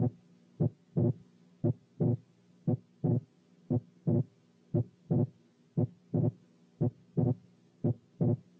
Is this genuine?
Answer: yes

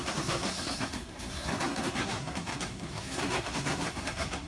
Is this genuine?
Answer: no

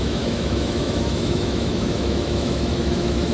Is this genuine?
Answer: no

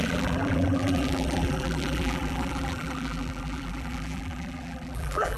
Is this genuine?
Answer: no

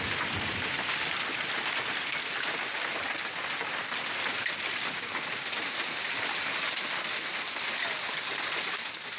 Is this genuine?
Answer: yes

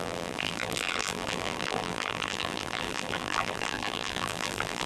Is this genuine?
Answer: no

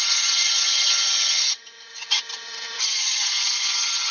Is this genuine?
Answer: no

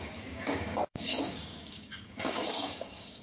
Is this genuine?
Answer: no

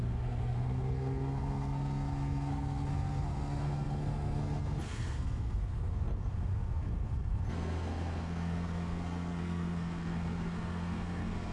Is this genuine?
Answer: no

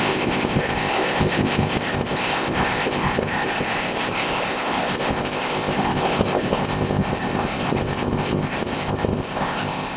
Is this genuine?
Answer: no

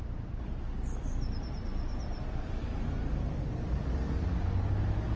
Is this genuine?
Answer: yes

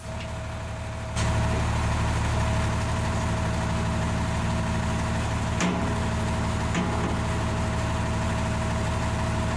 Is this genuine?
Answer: yes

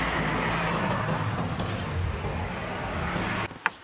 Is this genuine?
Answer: yes